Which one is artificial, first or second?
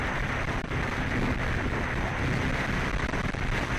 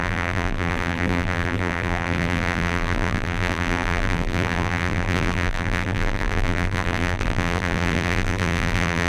second